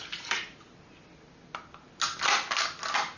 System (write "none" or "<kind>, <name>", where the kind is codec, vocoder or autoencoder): none